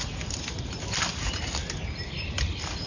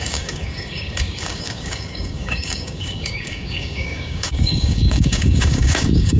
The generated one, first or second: second